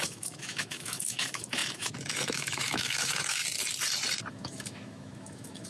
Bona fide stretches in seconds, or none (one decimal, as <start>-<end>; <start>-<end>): 3.4-4.3